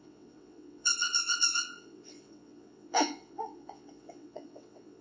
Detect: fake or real fake